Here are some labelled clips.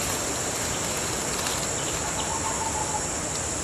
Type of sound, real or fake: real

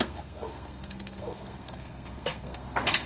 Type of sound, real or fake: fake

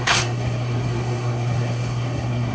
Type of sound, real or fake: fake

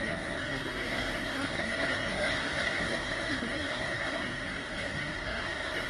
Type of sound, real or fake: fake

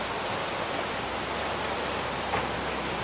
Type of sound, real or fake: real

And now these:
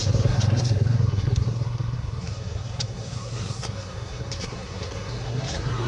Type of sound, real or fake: fake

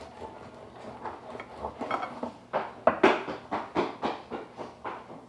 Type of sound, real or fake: real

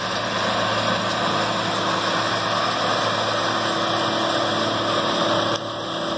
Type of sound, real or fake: real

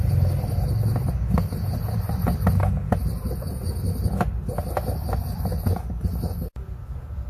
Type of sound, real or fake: real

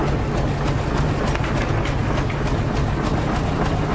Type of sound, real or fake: real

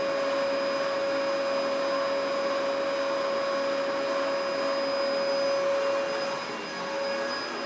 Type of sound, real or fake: real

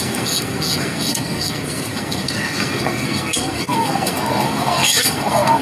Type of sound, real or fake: fake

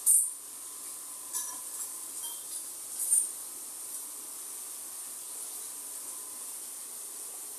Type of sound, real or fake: real